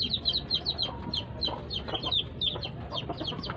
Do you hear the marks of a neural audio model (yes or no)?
no